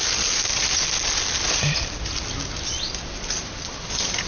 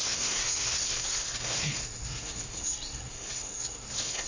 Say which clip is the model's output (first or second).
second